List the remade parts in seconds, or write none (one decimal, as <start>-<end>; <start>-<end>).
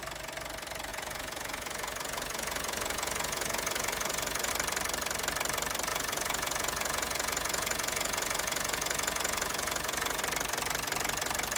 0.9-4.5; 5.9-10.2